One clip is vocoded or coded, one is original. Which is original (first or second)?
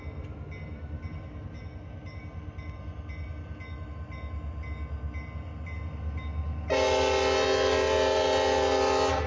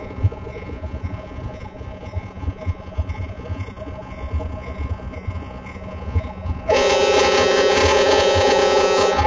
first